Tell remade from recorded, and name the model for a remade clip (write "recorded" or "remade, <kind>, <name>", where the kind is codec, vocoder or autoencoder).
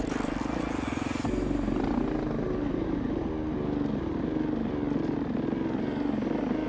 recorded